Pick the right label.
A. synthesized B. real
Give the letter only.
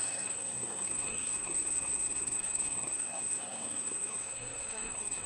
A